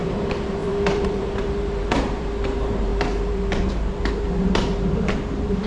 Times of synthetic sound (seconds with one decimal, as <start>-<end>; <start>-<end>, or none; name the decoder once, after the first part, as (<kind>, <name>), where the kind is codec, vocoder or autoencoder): 0.0-5.7 (vocoder, BigVGAN v2)

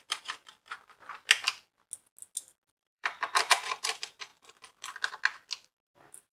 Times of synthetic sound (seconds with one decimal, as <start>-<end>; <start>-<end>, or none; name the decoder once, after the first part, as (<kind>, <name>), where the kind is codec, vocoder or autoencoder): 0.0-0.5 (vocoder, BigVGAN v2); 2.8-4.3; 5.8-6.3

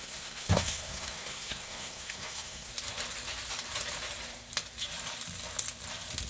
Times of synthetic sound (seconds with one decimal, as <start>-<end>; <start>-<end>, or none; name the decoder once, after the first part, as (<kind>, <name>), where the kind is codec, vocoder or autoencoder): 0.0-2.7 (codec, SNAC)

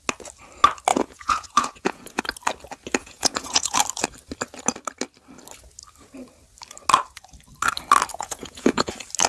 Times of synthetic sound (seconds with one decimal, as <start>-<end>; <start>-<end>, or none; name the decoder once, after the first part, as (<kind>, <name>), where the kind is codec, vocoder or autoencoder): 0.9-2.2 (vocoder, Vocos); 3.0-3.8; 8.1-8.9